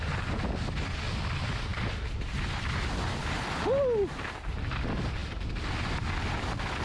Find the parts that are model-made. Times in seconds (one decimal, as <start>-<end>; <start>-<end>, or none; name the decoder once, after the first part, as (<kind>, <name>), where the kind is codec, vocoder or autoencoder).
none